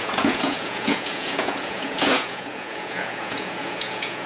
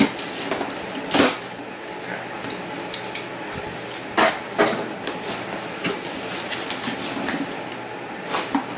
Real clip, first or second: second